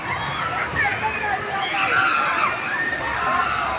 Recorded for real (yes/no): yes